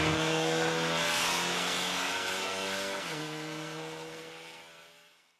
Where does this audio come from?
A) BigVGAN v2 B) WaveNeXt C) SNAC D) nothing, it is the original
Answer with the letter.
C